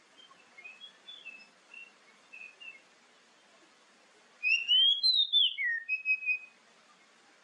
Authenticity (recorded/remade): recorded